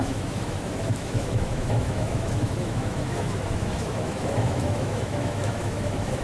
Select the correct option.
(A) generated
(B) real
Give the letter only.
A